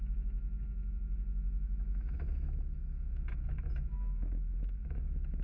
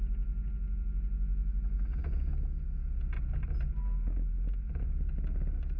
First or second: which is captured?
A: second